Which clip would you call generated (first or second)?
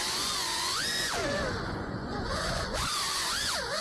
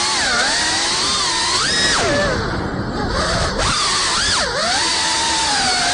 first